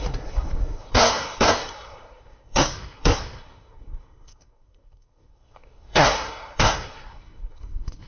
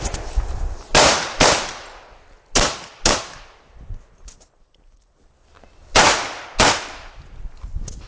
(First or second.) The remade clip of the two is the first